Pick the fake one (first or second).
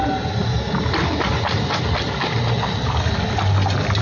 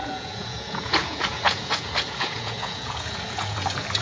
second